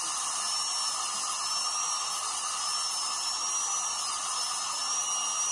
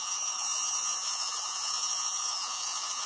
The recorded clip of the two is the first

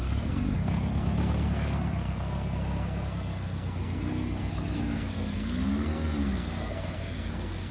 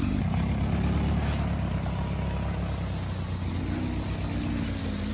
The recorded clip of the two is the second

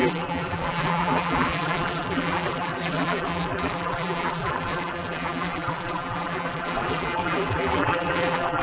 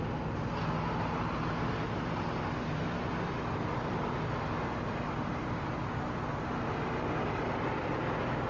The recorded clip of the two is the second